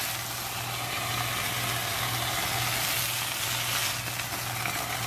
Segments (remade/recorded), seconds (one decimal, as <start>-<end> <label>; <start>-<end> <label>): 0.0-5.1 recorded